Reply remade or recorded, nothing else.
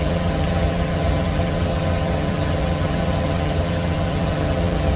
remade